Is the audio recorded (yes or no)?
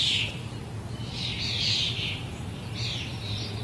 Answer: yes